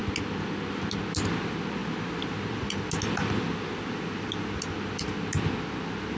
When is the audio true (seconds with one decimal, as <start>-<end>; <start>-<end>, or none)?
0.0-6.2